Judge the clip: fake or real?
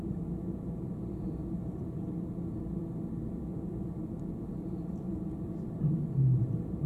fake